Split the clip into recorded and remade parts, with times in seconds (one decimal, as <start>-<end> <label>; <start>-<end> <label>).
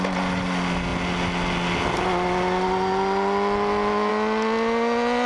0.0-5.3 recorded